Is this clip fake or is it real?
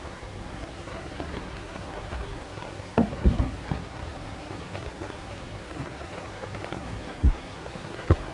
fake